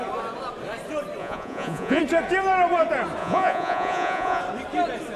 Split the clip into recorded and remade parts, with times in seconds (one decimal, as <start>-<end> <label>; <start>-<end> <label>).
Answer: 0.0-1.2 recorded; 1.2-2.0 remade; 2.0-3.2 recorded; 3.2-4.4 remade; 4.4-5.2 recorded

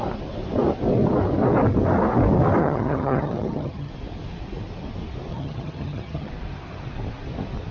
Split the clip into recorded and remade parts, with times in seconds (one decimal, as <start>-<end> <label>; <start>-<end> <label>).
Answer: 0.0-2.6 recorded; 2.6-3.9 remade; 3.9-5.3 recorded; 5.3-6.3 remade; 6.3-7.7 recorded

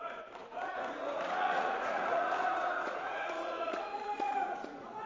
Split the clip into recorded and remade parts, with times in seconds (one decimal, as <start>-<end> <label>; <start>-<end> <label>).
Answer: 0.0-5.1 remade